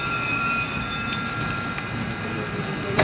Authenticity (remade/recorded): recorded